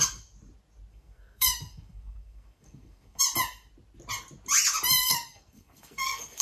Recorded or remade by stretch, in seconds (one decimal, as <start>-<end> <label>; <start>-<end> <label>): 0.0-0.9 recorded; 0.9-3.2 remade; 3.2-5.0 recorded; 5.0-6.4 remade

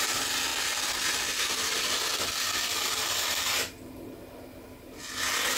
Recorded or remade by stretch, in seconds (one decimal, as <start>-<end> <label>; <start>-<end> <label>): 0.0-5.6 recorded

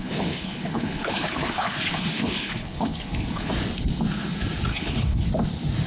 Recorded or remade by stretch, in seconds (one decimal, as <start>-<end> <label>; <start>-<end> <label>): 0.0-3.5 remade; 3.5-4.7 recorded; 4.7-5.3 remade; 5.3-5.9 recorded

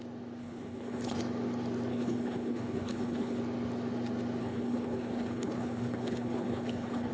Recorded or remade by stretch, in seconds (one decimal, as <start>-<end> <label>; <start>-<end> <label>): 0.0-0.4 recorded; 0.4-1.2 remade; 1.2-1.9 recorded; 1.9-3.4 remade; 3.4-4.4 recorded; 4.4-7.1 remade

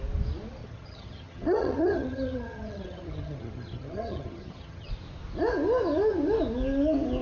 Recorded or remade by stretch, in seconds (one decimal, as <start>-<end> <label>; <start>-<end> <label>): 0.0-0.6 recorded; 0.6-4.9 remade; 4.9-7.2 recorded